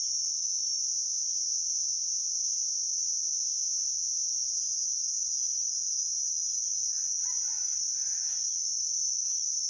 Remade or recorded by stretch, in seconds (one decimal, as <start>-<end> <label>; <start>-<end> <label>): 0.0-0.8 recorded; 0.8-4.3 remade; 4.3-9.7 recorded